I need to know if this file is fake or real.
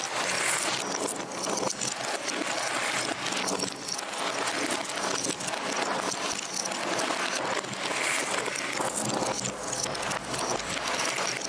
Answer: real